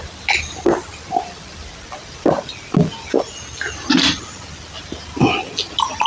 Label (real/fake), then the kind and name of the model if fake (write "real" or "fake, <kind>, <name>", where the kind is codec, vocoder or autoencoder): real